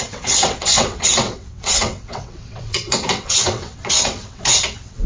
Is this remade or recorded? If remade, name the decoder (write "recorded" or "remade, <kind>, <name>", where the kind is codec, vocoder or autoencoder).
remade, vocoder, WaveNeXt